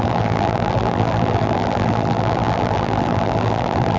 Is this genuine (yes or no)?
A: no